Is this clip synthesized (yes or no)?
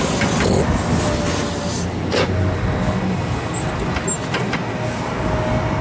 no